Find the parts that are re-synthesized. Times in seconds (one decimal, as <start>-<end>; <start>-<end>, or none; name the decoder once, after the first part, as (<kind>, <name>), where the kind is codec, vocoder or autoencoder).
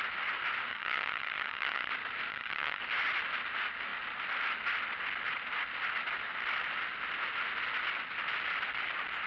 0.7-1.9 (vocoder, HiFi-GAN); 2.3-2.8